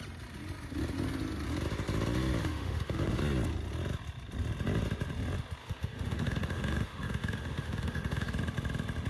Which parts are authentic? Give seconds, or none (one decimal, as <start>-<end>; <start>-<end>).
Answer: 0.0-2.4; 3.2-5.6; 8.3-9.1